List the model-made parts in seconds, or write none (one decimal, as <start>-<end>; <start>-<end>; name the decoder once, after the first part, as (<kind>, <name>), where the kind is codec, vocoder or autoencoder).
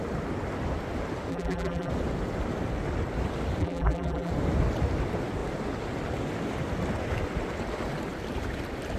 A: 1.3-1.9 (vocoder, BigVGAN v2); 3.6-4.3